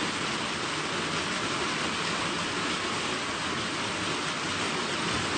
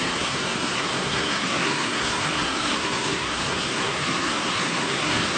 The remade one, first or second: second